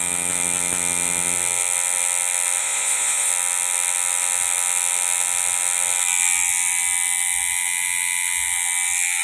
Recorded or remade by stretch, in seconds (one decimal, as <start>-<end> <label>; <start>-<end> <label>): 0.0-2.6 recorded; 2.6-3.3 remade; 3.3-9.2 recorded